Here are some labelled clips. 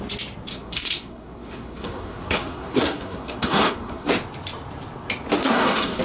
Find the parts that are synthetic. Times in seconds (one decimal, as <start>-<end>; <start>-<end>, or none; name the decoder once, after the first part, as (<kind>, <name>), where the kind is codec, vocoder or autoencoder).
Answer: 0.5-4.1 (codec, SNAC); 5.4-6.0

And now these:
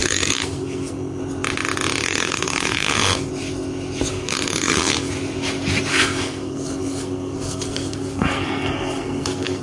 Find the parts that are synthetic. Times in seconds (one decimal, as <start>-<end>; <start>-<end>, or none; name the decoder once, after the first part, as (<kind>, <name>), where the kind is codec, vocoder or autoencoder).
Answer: 0.0-1.2 (codec, SNAC); 2.0-3.3; 4.1-5.1; 5.9-9.6

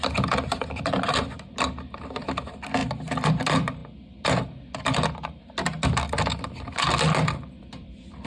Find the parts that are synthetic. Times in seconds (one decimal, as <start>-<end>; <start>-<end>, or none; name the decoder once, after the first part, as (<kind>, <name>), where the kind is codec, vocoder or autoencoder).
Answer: none

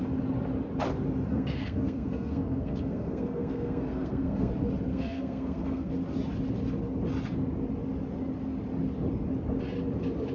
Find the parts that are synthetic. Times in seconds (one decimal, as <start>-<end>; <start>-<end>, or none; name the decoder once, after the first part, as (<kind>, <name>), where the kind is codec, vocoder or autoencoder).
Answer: 1.3-4.5 (codec, SNAC); 4.9-5.9

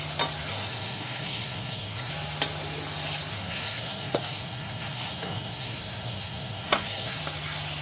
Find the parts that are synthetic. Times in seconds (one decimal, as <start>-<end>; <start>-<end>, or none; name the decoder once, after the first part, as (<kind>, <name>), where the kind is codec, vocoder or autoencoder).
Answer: 0.5-2.1 (codec, SNAC); 3.3-7.2